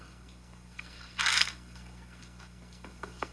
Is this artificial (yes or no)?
yes